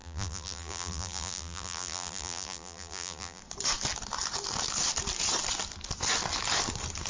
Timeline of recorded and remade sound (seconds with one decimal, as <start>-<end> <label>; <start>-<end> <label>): 0.0-3.4 remade; 3.4-7.1 recorded